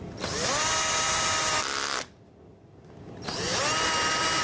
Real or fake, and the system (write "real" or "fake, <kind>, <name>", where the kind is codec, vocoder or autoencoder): real